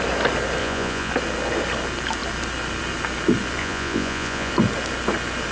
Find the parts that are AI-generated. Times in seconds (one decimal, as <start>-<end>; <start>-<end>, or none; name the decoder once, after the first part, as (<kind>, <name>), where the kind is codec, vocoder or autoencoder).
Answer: 0.6-1.1 (vocoder, Vocos); 3.6-4.5